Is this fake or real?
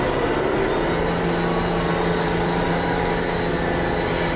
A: real